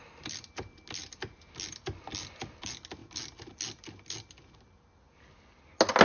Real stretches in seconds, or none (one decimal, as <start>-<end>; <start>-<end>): 0.0-6.0